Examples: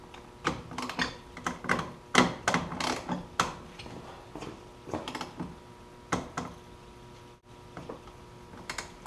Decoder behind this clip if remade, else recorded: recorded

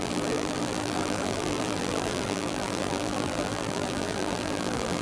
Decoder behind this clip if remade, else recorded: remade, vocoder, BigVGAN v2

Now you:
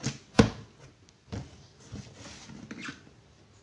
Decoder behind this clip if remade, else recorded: recorded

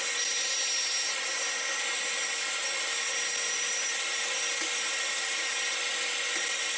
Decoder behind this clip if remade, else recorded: recorded